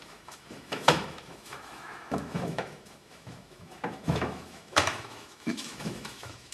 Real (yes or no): no